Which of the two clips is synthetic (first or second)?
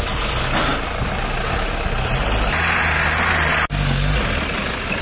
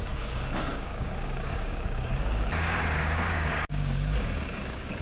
second